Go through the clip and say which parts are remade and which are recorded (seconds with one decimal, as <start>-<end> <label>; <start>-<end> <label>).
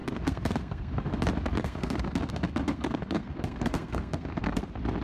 0.0-1.2 remade; 1.2-1.6 recorded; 1.6-4.6 remade; 4.6-5.0 recorded